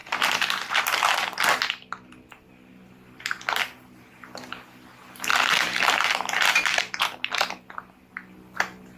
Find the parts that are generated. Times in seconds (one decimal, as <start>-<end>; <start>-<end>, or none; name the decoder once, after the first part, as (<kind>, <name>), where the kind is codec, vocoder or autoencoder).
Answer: 5.3-7.3 (vocoder, BigVGAN v2)